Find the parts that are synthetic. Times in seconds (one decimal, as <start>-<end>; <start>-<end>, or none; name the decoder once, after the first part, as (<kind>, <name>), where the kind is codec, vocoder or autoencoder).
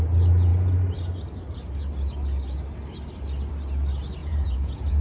4.2-5.0 (vocoder, Vocos)